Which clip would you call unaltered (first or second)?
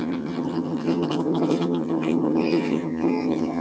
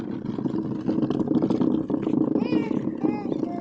second